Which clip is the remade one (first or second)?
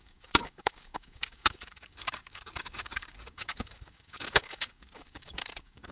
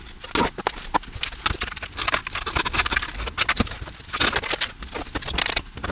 first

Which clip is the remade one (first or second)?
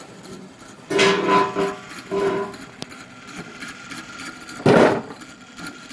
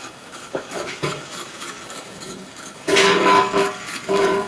second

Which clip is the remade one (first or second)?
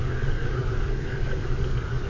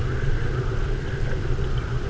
first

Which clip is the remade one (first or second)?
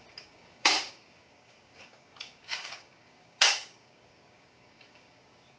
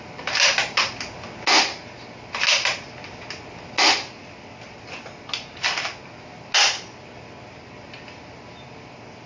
first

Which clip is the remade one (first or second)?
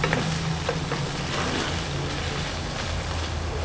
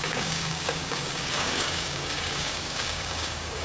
second